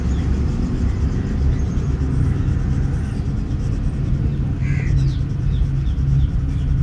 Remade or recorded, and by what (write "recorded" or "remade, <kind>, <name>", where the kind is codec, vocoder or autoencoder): recorded